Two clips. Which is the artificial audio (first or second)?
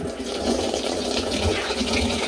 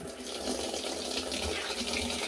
first